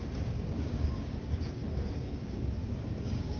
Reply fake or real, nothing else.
fake